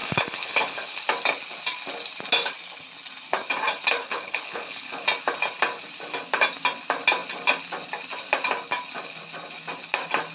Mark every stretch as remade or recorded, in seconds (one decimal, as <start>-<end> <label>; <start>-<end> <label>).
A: 0.0-1.0 remade; 1.0-4.0 recorded; 4.0-5.0 remade; 5.0-10.3 recorded